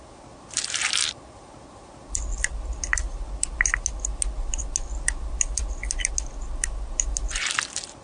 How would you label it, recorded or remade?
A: recorded